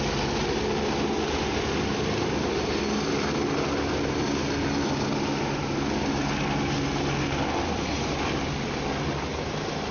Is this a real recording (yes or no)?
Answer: yes